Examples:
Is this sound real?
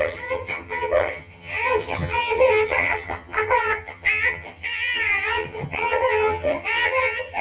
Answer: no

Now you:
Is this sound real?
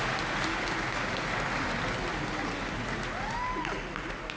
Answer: yes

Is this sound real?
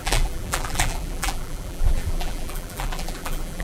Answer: no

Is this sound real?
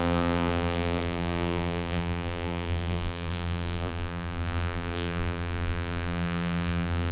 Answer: no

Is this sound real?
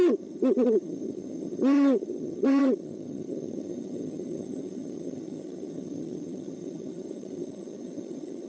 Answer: no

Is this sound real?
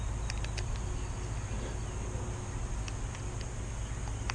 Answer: yes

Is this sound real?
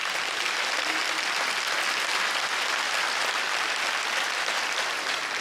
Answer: yes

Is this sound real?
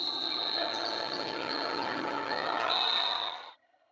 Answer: no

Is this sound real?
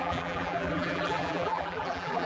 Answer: no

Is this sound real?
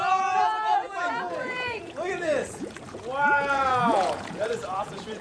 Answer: no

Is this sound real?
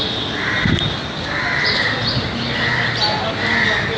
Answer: yes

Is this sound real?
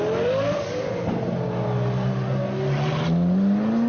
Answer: yes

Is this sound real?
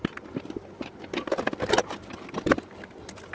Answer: yes